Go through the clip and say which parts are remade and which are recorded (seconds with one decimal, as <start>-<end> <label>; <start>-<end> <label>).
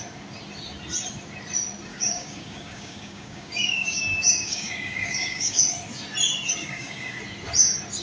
0.0-1.9 recorded; 1.9-5.6 remade; 5.6-6.6 recorded; 6.6-7.2 remade; 7.2-8.0 recorded